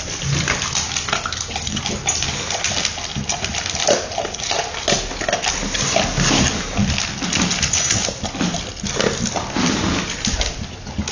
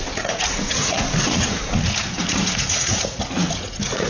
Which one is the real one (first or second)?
first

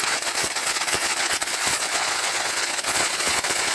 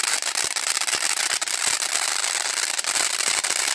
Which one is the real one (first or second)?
second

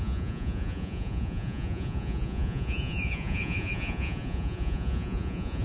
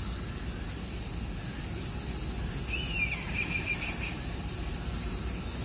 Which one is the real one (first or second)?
second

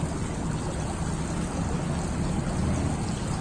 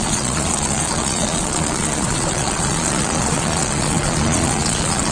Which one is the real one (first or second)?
first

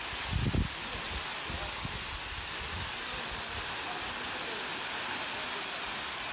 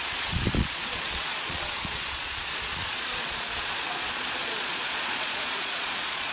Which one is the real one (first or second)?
first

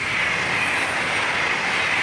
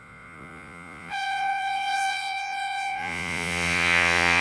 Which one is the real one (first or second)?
first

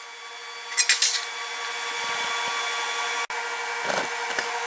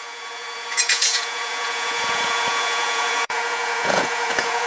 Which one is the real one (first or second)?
first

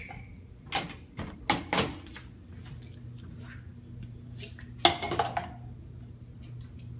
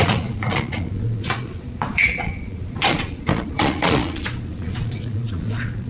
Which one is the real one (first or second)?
first